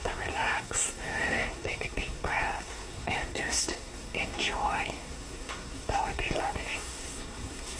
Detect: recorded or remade remade